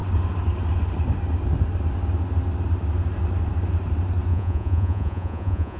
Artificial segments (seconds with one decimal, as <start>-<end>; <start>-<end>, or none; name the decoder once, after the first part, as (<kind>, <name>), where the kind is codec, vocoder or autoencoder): 4.3-5.8 (vocoder, Vocos)